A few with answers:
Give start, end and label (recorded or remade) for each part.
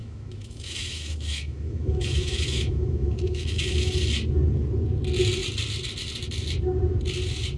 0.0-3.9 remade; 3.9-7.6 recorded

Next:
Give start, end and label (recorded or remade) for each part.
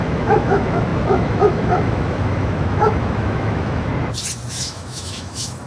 0.0-3.9 remade; 3.9-4.5 recorded; 4.5-5.7 remade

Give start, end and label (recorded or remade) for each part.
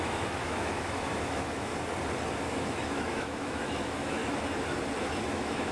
0.0-1.7 remade; 1.7-2.4 recorded; 2.4-4.2 remade; 4.2-5.2 recorded; 5.2-5.7 remade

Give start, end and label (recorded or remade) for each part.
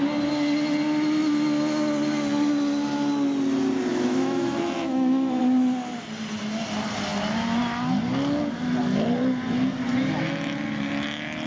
0.0-3.9 recorded; 3.9-5.4 remade; 5.4-11.5 recorded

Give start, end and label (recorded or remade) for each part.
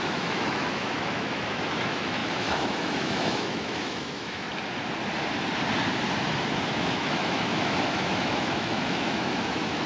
0.0-4.5 remade; 4.5-6.7 recorded; 6.7-9.9 remade